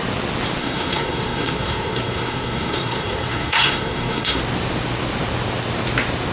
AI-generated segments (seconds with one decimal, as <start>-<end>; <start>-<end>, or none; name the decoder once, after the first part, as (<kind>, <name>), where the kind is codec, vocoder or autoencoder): 0.6-4.4 (codec, SNAC)